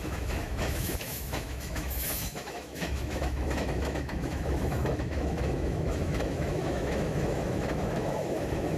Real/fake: fake